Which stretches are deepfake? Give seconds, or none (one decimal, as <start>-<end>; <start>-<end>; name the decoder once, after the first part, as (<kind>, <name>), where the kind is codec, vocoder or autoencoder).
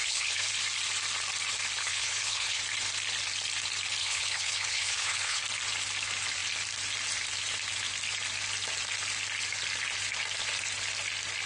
0.0-0.5 (codec, HILCodec); 1.8-2.6; 4.0-5.4